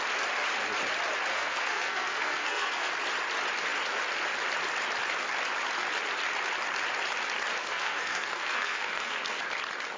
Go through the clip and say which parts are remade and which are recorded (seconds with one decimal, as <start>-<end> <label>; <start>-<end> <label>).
0.0-1.3 recorded; 1.3-2.9 remade; 2.9-7.6 recorded; 7.6-9.4 remade; 9.4-10.0 recorded

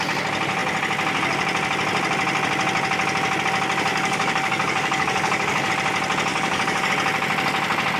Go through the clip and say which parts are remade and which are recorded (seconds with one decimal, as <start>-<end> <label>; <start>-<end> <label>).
0.0-3.9 recorded; 3.9-5.7 remade; 5.7-6.3 recorded; 6.3-6.9 remade; 6.9-8.0 recorded